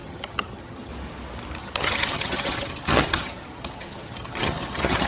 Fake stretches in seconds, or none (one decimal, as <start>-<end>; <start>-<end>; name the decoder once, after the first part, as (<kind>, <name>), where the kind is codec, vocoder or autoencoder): 0.0-0.9 (vocoder, HiFi-GAN); 1.6-5.1